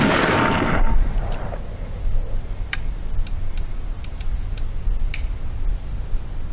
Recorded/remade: recorded